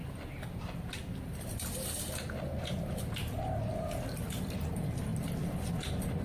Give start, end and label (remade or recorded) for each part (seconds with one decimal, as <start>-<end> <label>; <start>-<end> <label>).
0.0-6.2 recorded